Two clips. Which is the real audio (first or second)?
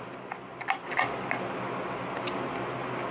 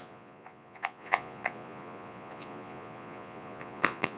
first